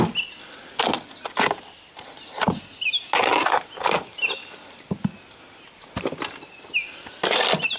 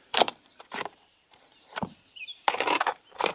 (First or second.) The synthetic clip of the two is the second